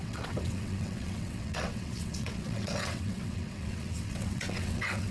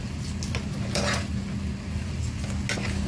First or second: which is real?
second